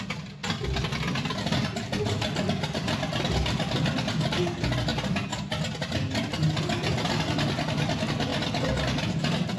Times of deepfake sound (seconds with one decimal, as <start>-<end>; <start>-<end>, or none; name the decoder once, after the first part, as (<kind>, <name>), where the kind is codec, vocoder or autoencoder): 0.4-3.9 (vocoder, BigVGAN v2); 4.9-5.4